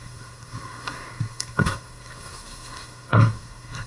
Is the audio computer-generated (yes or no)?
yes